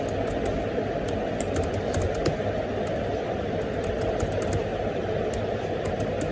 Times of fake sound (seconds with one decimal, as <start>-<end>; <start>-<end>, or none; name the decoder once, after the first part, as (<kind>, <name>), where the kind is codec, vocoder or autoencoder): none